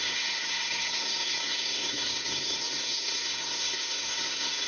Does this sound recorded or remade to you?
remade